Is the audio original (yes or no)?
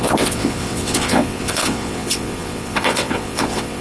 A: no